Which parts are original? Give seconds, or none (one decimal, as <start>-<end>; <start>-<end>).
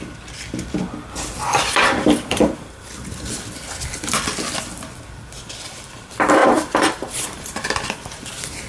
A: 0.0-1.8; 2.8-6.4; 7.7-8.7